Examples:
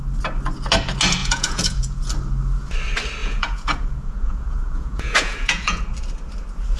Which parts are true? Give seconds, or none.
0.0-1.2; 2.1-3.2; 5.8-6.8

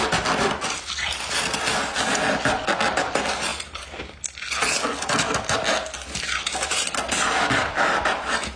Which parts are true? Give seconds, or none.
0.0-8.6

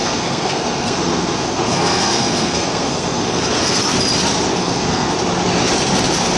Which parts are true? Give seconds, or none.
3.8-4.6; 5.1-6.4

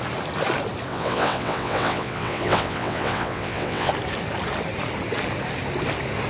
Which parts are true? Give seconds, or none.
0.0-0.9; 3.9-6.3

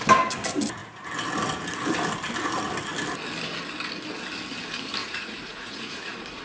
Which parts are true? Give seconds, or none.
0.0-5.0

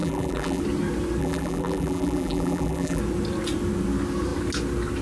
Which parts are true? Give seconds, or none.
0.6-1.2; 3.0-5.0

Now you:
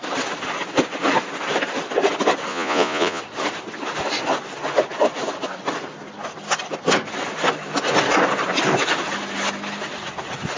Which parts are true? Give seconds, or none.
0.0-2.5; 3.2-10.6